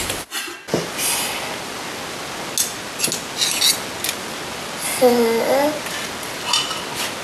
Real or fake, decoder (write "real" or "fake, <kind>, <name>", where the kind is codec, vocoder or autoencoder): real